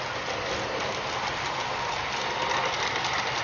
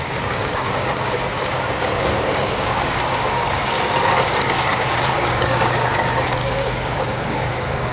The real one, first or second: first